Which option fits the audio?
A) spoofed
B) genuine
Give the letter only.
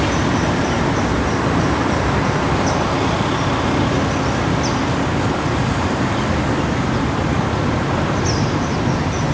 B